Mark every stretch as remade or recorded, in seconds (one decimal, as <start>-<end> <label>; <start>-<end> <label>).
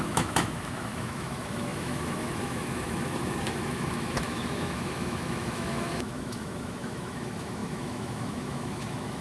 0.0-9.2 remade